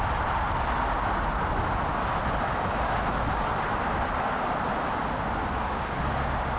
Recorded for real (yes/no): yes